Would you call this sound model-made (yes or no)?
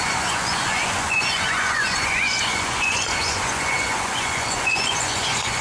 yes